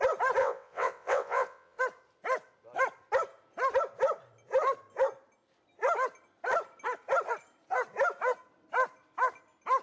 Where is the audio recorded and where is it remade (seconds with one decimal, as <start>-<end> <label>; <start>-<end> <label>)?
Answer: 0.0-0.4 recorded; 0.4-1.8 remade; 1.8-9.8 recorded